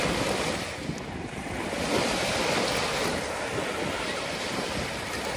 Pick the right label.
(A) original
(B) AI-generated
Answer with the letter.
A